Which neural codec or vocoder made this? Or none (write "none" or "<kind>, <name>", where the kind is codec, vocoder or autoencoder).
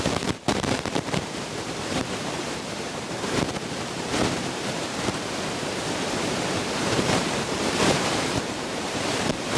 vocoder, BigVGAN v2